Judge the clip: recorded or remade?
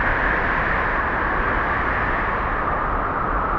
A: recorded